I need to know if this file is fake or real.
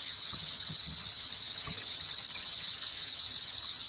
fake